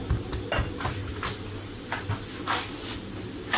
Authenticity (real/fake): real